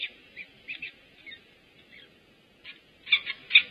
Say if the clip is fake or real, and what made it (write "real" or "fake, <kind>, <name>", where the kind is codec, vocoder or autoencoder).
real